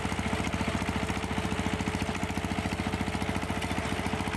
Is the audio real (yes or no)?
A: yes